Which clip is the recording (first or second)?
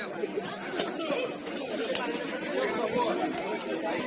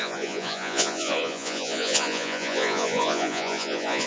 first